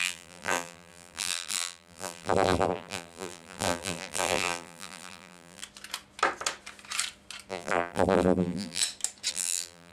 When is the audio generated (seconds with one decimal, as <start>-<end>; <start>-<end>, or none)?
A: 0.0-5.6; 7.5-8.8; 9.3-9.9